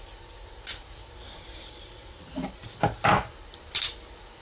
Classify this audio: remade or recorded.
recorded